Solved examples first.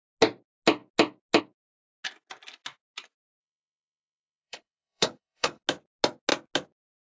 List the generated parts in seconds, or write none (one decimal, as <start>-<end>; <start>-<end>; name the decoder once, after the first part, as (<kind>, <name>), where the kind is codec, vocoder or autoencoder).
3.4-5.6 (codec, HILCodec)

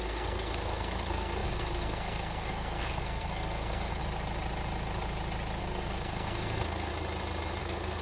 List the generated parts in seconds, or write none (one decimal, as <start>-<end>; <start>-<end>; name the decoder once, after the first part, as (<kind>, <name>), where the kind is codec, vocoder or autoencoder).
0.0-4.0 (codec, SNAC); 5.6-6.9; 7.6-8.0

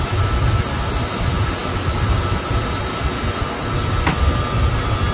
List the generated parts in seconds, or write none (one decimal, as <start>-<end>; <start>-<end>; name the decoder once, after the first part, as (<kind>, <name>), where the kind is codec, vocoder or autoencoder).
none

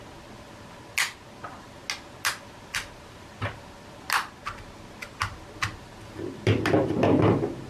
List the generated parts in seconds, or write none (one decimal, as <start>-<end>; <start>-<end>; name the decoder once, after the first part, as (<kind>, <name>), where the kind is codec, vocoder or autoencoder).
none

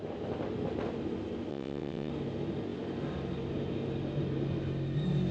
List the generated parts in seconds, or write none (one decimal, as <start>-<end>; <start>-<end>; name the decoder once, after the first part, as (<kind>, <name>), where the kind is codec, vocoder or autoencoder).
1.5-2.1 (vocoder, WaveNeXt)